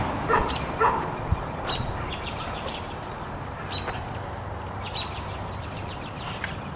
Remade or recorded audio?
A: remade